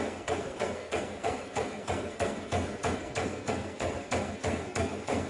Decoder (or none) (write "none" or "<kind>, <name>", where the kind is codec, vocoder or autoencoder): codec, SNAC